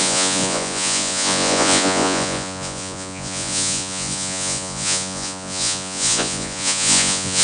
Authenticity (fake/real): fake